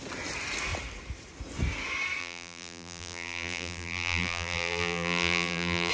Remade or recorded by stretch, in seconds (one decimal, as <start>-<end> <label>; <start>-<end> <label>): 0.0-2.2 recorded; 2.2-5.9 remade

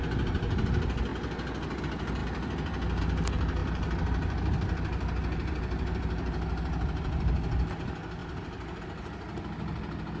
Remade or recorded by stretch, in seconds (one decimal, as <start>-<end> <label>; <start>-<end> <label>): 0.0-2.2 recorded; 2.2-3.0 remade; 3.0-3.6 recorded; 3.6-7.7 remade; 7.7-8.2 recorded; 8.2-8.8 remade; 8.8-10.2 recorded

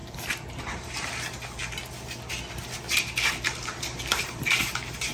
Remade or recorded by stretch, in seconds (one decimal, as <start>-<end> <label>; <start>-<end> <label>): 0.0-1.1 remade; 1.1-4.1 recorded; 4.1-5.1 remade